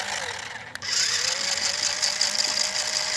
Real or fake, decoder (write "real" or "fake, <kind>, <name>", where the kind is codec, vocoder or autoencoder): real